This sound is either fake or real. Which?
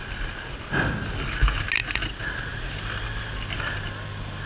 real